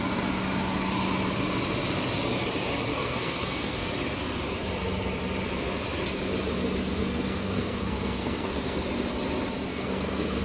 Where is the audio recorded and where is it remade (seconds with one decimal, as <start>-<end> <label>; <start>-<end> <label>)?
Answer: 0.0-2.9 recorded; 2.9-3.9 remade; 3.9-7.0 recorded; 7.0-8.8 remade; 8.8-9.7 recorded; 9.7-10.4 remade